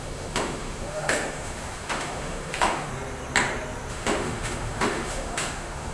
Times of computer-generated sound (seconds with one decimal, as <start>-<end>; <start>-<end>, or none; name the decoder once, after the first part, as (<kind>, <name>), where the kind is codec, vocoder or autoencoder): 0.0-2.9 (autoencoder, DAC-VAE); 3.9-5.9